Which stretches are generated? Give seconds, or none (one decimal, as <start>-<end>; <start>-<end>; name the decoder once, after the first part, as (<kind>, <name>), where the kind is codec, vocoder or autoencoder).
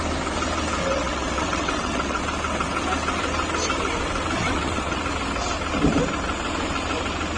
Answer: 0.8-2.2 (vocoder, WaveNeXt); 4.4-5.0